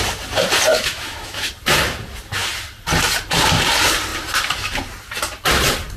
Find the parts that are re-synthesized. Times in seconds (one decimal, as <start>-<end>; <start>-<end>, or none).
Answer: 0.7-1.5